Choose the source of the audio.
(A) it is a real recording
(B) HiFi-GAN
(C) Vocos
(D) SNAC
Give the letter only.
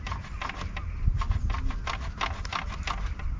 A